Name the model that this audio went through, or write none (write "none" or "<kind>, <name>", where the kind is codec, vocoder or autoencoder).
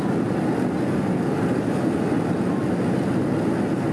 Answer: none